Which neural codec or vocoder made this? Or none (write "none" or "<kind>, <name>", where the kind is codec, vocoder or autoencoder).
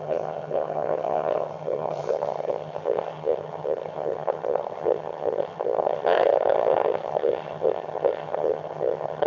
vocoder, HiFi-GAN